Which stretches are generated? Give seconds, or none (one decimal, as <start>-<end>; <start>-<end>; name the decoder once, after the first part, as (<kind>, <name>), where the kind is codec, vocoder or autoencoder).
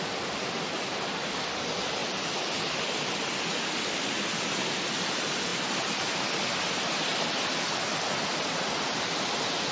none